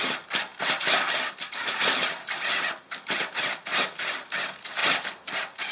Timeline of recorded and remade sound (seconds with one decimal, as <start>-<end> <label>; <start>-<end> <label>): 0.0-5.7 recorded